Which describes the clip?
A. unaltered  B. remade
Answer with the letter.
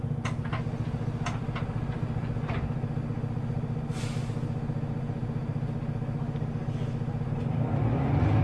A